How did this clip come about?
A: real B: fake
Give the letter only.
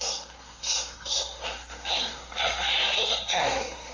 B